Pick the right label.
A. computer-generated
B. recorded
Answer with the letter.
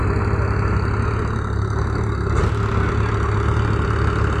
B